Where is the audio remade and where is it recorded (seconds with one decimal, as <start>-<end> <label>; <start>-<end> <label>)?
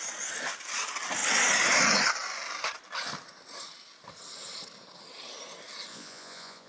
0.0-5.9 recorded; 5.9-6.7 remade